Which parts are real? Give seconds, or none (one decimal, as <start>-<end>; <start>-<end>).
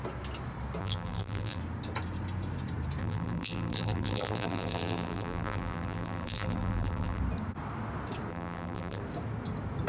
0.0-0.8; 1.6-3.0; 7.2-8.3; 9.0-9.9